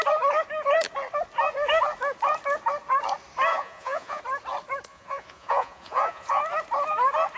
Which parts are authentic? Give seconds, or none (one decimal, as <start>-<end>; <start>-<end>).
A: 0.0-3.5; 4.2-4.9; 6.4-7.4